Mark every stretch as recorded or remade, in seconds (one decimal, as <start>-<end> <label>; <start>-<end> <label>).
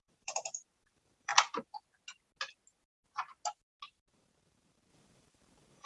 0.0-1.3 remade; 1.3-4.1 recorded; 4.1-5.9 remade